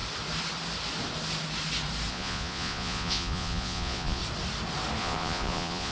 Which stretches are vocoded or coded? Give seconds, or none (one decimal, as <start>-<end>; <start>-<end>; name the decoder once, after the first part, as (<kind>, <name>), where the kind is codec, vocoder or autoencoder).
2.1-4.2 (vocoder, Vocos); 5.0-5.9